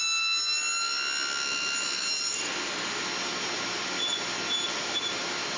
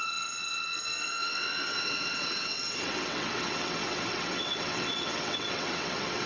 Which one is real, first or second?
first